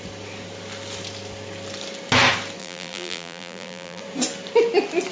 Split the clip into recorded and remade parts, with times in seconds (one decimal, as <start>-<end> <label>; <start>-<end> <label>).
0.0-2.6 recorded; 2.6-4.0 remade; 4.0-5.1 recorded